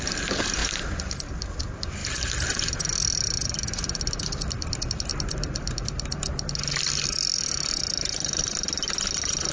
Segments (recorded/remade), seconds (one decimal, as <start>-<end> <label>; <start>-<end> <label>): 0.0-0.6 recorded; 0.6-1.3 remade; 1.3-9.5 recorded